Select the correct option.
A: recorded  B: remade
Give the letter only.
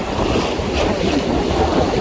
B